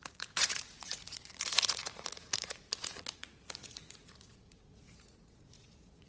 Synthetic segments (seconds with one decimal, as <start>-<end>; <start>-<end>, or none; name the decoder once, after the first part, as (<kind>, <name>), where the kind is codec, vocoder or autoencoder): 0.0-6.1 (vocoder, Vocos)